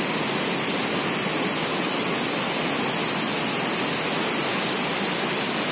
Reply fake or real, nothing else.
real